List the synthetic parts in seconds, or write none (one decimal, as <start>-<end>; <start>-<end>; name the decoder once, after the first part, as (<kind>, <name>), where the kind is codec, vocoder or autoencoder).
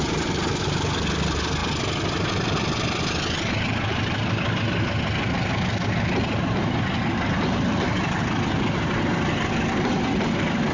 none